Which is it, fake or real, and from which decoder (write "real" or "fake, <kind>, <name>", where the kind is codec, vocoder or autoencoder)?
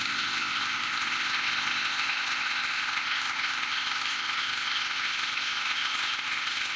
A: fake, codec, ZipCodec